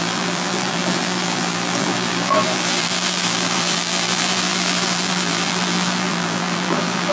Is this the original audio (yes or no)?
no